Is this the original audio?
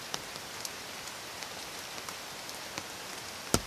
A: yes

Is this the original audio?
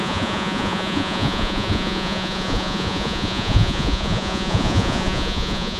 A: no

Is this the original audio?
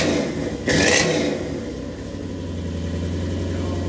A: yes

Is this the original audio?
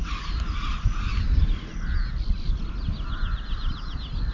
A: yes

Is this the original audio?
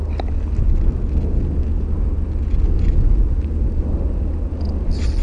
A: yes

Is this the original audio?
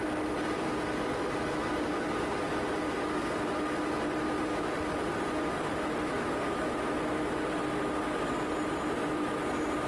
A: yes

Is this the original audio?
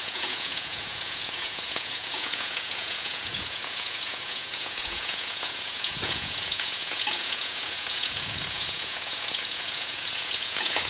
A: no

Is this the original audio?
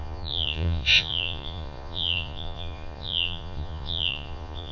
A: no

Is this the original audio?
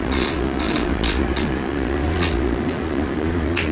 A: no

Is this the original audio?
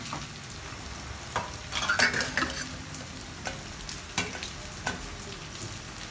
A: yes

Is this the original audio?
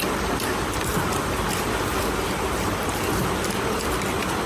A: yes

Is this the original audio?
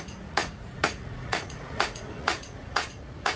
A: no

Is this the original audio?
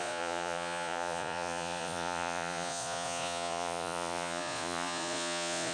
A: no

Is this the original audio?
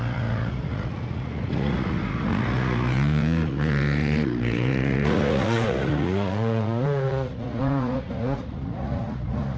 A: no